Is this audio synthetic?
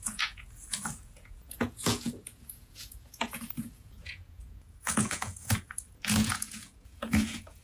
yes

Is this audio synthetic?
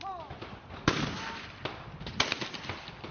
no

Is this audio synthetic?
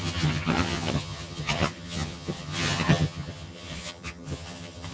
yes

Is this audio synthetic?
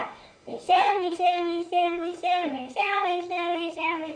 yes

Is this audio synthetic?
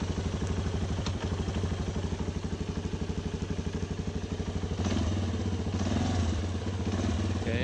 no